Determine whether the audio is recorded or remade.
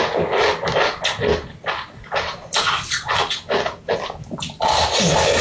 recorded